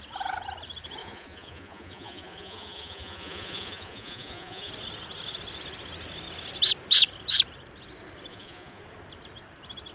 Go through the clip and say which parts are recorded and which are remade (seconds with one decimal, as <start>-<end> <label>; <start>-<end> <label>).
0.0-1.0 recorded; 1.0-4.7 remade; 4.7-8.3 recorded; 8.3-8.8 remade; 8.8-9.9 recorded